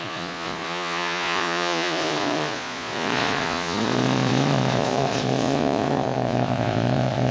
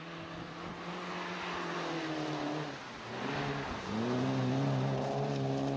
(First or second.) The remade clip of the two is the first